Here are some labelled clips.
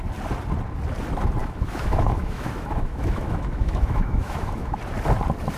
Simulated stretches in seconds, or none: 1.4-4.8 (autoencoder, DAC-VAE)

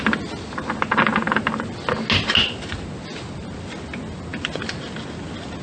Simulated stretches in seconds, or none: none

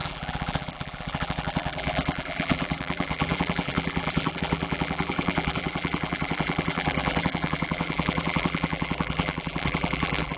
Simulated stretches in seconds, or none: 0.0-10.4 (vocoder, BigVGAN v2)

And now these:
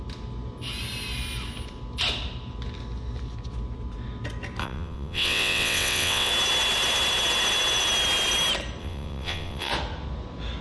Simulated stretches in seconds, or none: 4.6-6.3 (vocoder, WaveNeXt); 8.8-9.7

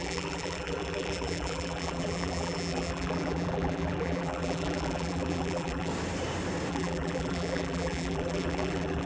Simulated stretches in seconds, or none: 0.0-5.9 (vocoder, BigVGAN v2); 6.7-9.1

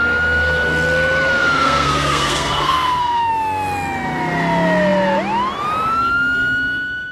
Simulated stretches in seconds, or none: 1.4-3.3 (codec, SNAC)

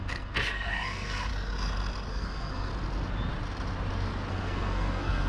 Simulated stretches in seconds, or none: 0.0-1.3 (codec, SNAC); 2.1-2.7; 4.3-5.3

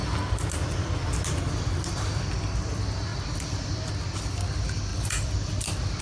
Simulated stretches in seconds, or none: 0.0-1.4 (vocoder, BigVGAN v2); 3.1-3.9; 4.9-6.0